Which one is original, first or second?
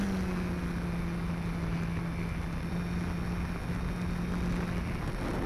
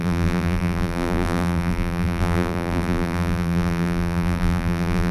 first